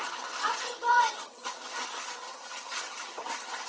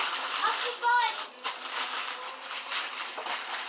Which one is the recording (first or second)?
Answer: second